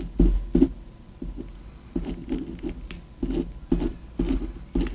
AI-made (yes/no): no